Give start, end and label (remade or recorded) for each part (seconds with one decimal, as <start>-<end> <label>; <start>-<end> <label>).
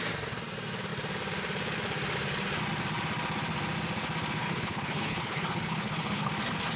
0.0-4.4 recorded; 4.4-6.3 remade; 6.3-6.8 recorded